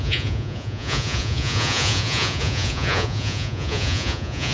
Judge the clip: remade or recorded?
remade